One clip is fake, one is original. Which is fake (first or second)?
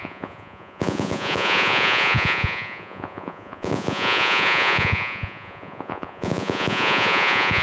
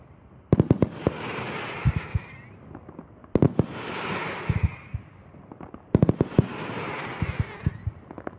first